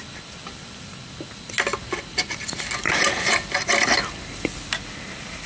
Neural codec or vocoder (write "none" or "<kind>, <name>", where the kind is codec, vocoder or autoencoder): none